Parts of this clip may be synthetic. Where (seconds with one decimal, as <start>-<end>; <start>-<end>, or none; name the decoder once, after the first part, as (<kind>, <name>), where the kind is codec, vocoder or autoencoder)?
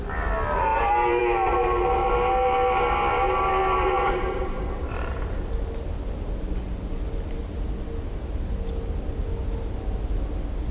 0.7-1.2 (vocoder, BigVGAN v2); 2.0-5.5